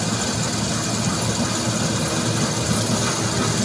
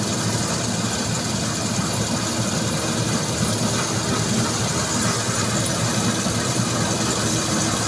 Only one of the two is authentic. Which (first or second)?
first